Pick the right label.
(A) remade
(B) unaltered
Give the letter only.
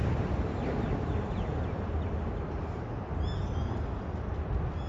B